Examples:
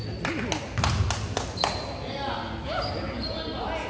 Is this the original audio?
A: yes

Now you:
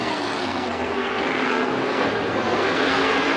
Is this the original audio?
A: no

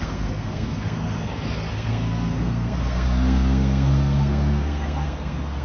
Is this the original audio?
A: no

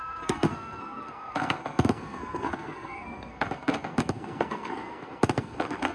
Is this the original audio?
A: no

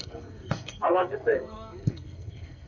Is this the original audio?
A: no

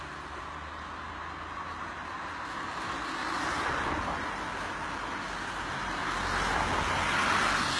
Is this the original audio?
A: yes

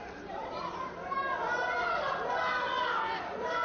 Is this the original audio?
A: yes